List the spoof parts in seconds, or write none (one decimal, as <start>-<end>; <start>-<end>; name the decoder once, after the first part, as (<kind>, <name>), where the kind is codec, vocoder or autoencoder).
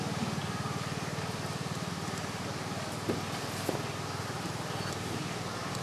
none